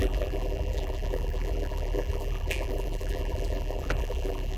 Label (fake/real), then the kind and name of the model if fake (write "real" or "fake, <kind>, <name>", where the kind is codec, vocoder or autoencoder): fake, vocoder, BigVGAN v2